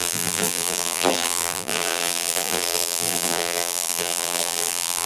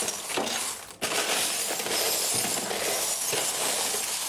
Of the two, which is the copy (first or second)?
first